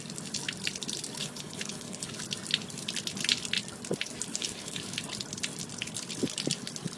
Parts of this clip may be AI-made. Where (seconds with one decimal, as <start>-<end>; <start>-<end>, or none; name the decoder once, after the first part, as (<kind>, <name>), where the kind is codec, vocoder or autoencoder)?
1.2-2.1 (codec, HILCodec); 4.3-4.8